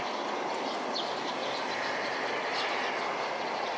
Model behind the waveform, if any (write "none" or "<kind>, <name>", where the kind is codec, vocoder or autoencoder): none